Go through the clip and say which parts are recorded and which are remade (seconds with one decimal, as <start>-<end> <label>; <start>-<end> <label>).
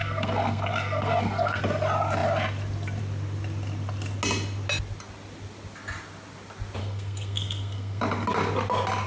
0.0-1.6 remade; 1.6-6.8 recorded; 6.8-8.0 remade; 8.0-9.1 recorded